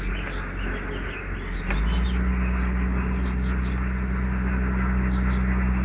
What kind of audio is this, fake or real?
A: real